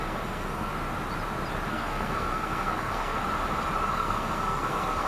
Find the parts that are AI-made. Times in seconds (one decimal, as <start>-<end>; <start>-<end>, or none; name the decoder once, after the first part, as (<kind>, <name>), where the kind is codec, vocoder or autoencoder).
0.0-0.7 (codec, SNAC); 1.7-3.2; 3.9-5.1